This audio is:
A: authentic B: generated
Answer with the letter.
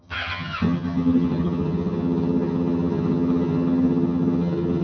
B